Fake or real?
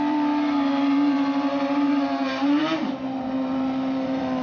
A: fake